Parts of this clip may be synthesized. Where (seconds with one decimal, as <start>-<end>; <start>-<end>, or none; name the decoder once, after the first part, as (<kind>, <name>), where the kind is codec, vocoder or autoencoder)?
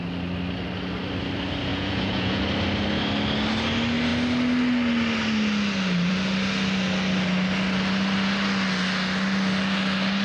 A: 1.7-2.4 (vocoder, Vocos)